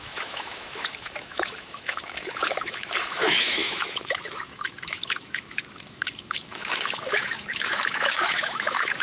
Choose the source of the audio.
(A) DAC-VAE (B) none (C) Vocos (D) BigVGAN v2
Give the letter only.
A